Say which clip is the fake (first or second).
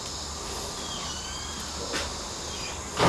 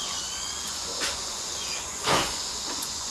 second